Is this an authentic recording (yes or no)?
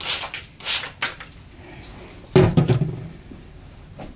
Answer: yes